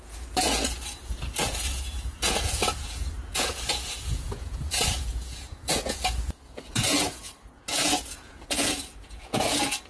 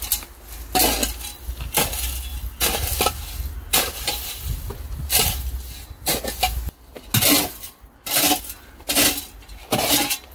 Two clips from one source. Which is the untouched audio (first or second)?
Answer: second